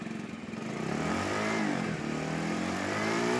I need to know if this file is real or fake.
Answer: real